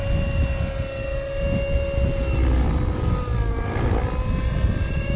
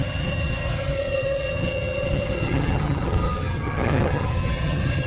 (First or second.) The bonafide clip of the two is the first